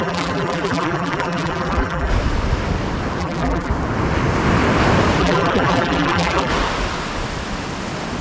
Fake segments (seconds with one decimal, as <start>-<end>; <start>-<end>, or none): 0.0-2.1; 3.2-3.7; 5.2-6.5